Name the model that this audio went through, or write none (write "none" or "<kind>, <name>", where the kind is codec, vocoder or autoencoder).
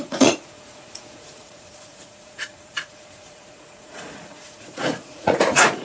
vocoder, Vocos